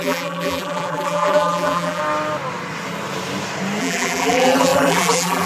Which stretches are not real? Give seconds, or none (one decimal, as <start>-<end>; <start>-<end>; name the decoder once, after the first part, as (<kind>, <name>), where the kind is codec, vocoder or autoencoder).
0.0-2.0 (vocoder, BigVGAN v2); 3.8-5.5